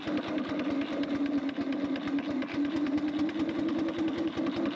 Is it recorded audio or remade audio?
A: remade